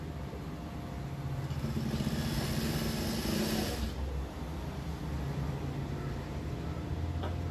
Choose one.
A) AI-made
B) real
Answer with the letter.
B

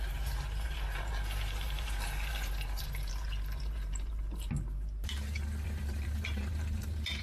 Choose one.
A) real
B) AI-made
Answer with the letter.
B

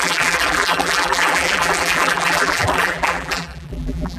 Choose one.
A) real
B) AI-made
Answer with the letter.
B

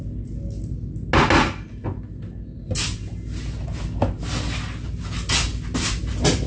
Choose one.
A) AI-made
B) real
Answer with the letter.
B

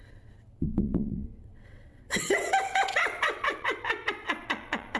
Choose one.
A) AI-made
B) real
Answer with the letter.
A